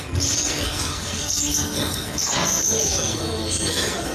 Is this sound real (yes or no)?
no